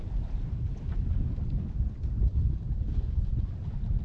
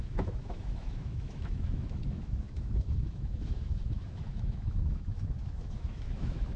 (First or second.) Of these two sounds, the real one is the first